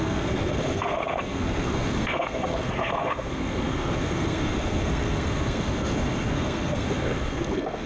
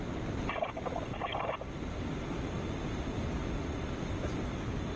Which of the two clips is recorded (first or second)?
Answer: second